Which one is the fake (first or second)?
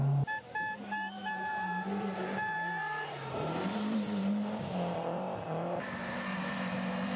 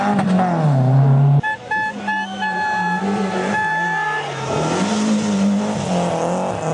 first